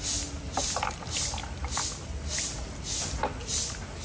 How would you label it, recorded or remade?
recorded